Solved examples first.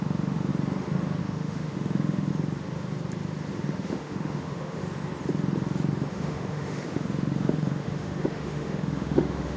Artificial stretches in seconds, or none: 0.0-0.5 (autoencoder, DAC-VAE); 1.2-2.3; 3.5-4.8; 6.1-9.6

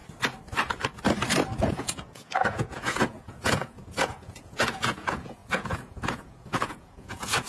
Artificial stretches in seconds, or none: 1.6-7.5 (vocoder, Vocos)

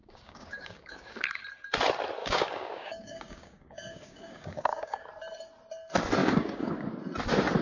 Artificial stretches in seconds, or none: 0.0-1.4 (codec, DAC); 2.2-5.1; 6.2-6.7

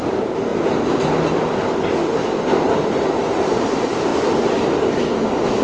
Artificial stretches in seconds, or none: 0.0-0.5 (vocoder, BigVGAN v2); 2.8-4.1

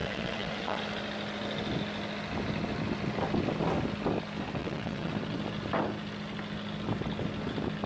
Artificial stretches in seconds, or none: 0.0-0.8 (vocoder, WaveNeXt); 4.6-5.1